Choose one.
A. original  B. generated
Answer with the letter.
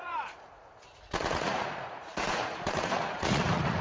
B